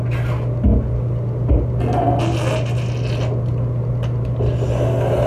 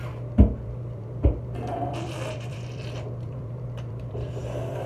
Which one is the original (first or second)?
first